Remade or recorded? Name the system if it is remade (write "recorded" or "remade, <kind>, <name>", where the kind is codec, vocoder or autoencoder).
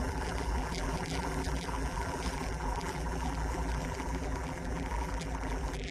remade, vocoder, BigVGAN v2